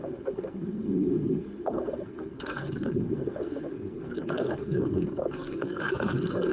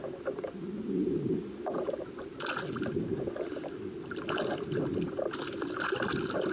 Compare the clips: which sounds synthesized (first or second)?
first